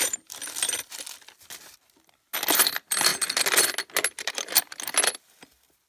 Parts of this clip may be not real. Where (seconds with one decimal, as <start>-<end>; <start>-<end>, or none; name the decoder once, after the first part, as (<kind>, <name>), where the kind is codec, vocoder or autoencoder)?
none